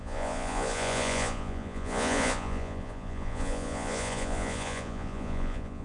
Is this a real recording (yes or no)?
no